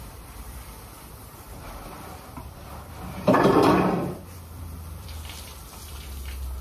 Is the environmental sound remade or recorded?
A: remade